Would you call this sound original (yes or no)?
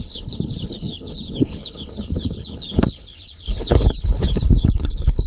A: no